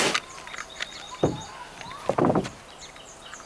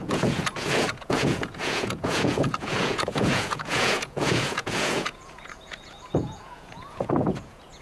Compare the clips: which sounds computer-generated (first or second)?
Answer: second